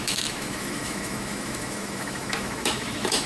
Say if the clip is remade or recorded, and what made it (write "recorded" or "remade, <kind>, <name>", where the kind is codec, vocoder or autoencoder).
remade, autoencoder, DAC-VAE